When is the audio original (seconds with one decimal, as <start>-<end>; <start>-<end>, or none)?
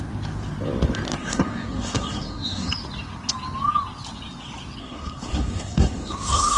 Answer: 0.0-1.2; 2.7-4.8